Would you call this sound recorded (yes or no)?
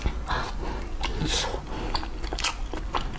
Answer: yes